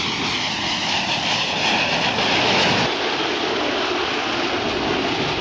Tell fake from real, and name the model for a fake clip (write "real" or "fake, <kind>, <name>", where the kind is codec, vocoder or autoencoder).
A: real